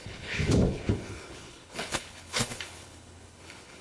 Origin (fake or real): fake